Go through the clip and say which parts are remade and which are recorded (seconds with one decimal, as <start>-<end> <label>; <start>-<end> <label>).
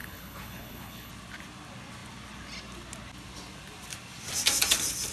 0.0-1.1 remade; 1.1-5.1 recorded